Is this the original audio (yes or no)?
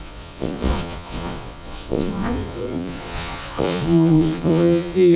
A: no